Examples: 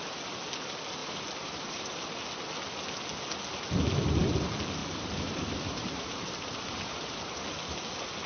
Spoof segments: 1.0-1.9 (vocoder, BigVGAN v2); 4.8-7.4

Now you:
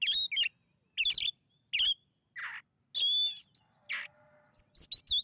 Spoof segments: none

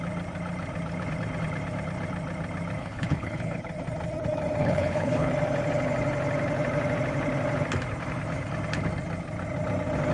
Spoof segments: 2.8-3.6 (codec, HILCodec); 4.6-5.3